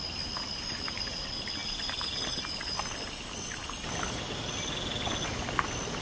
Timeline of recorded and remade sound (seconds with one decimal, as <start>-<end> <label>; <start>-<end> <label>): 0.0-6.0 recorded

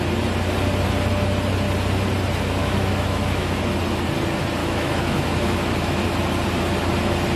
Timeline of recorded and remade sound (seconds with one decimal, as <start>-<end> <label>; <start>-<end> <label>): 0.0-2.6 recorded; 2.6-3.6 remade; 3.6-4.6 recorded; 4.6-6.1 remade; 6.1-7.3 recorded

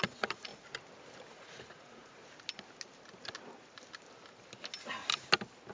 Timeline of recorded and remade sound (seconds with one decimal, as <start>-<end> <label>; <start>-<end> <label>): 0.0-0.5 remade; 0.5-1.3 recorded; 1.3-2.2 remade; 2.2-5.7 recorded

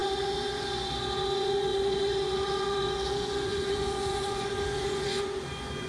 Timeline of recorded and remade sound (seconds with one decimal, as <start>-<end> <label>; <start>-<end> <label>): 0.0-5.9 remade